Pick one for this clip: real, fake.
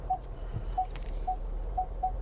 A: fake